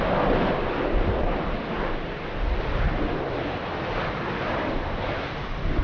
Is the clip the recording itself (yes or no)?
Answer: yes